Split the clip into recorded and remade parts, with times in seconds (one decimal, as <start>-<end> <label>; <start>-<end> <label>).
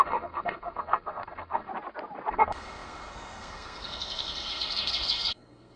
0.0-1.7 remade; 1.7-2.3 recorded; 2.3-5.8 remade